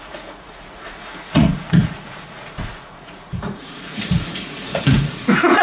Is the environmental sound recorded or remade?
remade